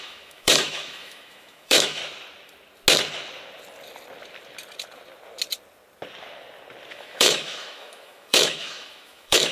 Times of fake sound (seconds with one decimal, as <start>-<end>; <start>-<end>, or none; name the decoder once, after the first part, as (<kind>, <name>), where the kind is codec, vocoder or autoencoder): 0.0-2.0 (autoencoder, DAC-VAE); 6.9-9.5